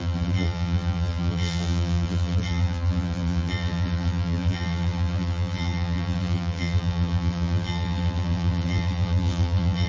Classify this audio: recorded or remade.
remade